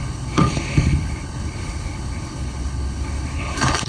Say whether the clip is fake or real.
fake